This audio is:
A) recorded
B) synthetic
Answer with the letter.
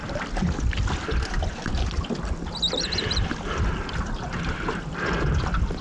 A